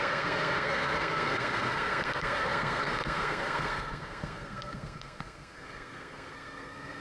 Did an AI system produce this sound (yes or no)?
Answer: yes